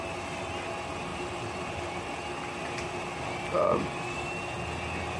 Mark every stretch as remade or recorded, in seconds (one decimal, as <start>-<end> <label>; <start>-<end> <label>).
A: 0.0-1.1 recorded; 1.1-2.1 remade; 2.1-5.2 recorded